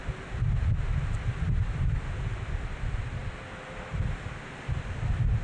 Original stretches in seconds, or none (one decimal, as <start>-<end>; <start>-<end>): 0.0-5.4